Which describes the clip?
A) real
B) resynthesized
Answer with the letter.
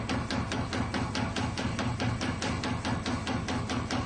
A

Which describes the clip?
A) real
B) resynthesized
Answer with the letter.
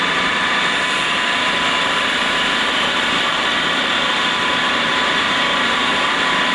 B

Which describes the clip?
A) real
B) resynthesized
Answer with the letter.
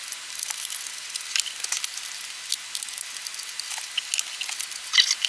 A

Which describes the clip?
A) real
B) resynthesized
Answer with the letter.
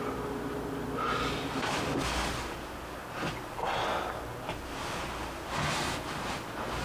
A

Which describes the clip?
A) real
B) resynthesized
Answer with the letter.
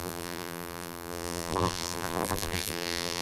B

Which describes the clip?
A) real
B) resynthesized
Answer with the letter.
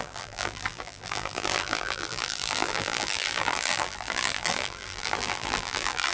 B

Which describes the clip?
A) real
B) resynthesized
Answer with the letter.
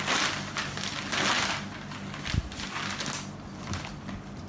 A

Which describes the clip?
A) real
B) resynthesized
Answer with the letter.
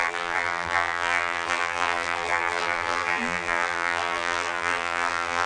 B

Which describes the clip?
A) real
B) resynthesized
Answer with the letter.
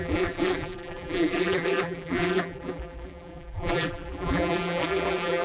B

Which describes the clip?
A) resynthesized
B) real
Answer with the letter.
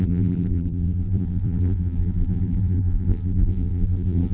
A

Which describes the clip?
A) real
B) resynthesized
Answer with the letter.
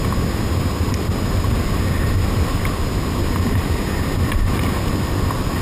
A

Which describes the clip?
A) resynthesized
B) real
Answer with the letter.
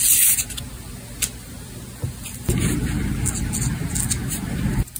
B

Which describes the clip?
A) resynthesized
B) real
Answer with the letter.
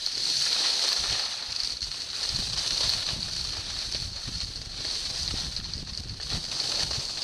B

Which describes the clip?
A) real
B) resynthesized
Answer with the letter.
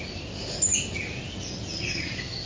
A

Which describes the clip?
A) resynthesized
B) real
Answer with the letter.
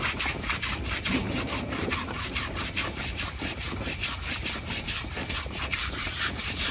A